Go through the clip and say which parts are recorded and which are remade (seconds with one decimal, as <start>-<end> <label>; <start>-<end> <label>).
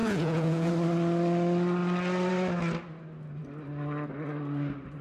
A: 0.0-0.7 remade; 0.7-5.0 recorded